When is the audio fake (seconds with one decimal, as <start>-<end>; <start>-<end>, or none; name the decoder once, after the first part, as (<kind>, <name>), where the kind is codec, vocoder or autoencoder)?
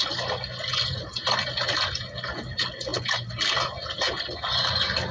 none